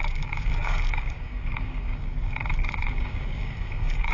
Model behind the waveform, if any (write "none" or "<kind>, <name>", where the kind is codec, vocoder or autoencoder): codec, DAC